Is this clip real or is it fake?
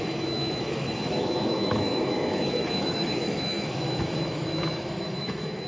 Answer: fake